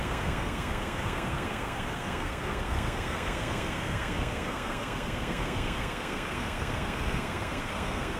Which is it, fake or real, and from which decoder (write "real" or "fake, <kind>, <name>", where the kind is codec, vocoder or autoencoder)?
fake, codec, SNAC